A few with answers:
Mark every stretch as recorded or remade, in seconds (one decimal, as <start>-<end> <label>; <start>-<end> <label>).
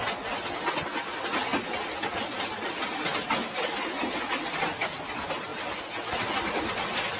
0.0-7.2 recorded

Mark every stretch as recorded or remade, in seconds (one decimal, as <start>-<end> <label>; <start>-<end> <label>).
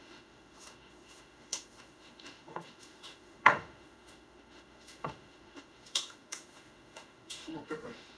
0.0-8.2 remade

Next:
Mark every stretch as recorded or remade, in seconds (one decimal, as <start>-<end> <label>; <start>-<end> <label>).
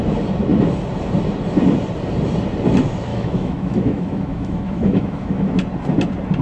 0.0-3.1 recorded; 3.1-5.5 remade; 5.5-6.4 recorded